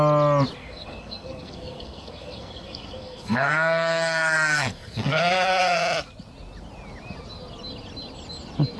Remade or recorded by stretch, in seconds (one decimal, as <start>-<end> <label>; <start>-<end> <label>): 0.0-0.6 recorded; 0.6-5.8 remade; 5.8-8.8 recorded